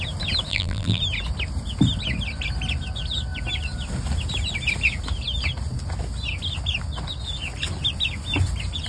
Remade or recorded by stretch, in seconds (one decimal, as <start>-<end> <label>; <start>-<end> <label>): 0.0-0.5 recorded; 0.5-1.0 remade; 1.0-8.9 recorded